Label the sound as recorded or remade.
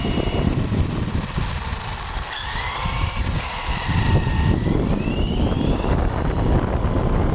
recorded